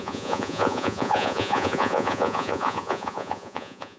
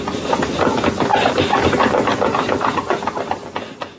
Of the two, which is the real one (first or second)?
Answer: second